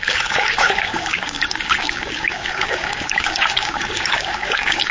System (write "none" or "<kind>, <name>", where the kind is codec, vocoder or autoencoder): codec, DAC